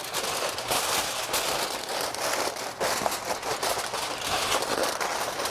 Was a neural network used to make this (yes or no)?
no